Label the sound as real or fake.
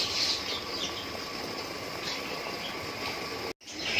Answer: real